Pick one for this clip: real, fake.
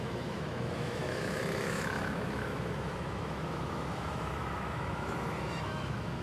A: fake